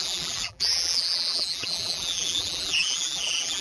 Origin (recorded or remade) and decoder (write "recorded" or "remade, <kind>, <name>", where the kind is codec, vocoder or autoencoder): remade, vocoder, BigVGAN v2